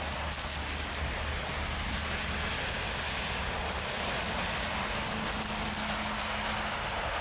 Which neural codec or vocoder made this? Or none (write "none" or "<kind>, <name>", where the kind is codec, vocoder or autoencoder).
none